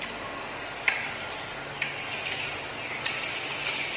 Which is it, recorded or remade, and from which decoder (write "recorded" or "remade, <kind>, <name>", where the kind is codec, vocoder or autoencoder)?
recorded